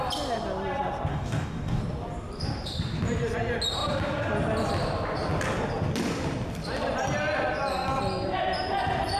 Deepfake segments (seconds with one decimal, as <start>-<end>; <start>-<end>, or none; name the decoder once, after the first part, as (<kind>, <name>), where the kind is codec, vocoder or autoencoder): 1.1-1.8 (codec, DAC)

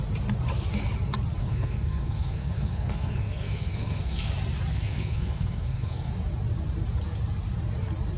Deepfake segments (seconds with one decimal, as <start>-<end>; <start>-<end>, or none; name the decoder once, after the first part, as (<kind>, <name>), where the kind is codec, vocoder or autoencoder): 1.4-4.3 (codec, SNAC); 4.7-6.1

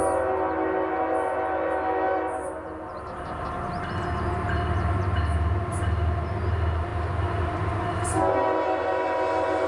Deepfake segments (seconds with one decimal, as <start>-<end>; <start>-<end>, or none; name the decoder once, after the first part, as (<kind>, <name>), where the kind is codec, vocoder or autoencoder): none

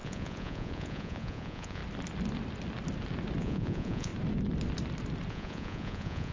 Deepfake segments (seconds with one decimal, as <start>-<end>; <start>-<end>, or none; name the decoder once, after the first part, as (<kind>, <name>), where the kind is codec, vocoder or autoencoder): 0.0-1.8 (vocoder, Vocos); 3.4-4.1; 5.3-6.3

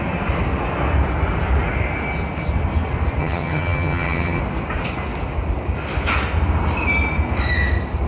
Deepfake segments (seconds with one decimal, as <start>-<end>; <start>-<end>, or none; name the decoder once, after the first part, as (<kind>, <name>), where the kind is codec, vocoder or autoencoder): 3.2-4.4 (vocoder, HiFi-GAN)

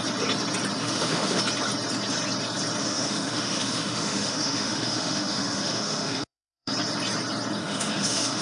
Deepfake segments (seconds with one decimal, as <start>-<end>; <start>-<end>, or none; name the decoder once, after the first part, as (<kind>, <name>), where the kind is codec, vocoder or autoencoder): 0.8-1.4 (autoencoder, DAC-VAE); 2.8-6.7; 7.6-8.4

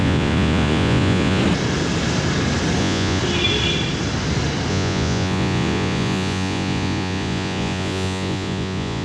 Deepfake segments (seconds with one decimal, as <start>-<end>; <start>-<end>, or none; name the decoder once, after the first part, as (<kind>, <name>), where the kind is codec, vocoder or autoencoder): 0.0-1.4 (vocoder, Vocos); 2.8-3.2; 4.7-9.0